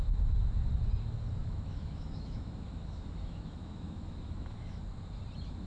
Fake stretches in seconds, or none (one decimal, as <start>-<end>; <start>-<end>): 1.4-4.8